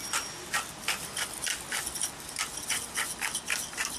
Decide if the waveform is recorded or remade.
recorded